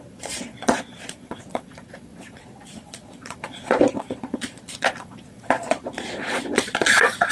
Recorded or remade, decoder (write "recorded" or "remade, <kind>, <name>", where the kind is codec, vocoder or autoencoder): remade, vocoder, Vocos